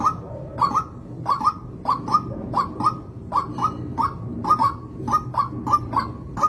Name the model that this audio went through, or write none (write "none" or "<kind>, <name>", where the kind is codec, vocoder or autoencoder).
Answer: none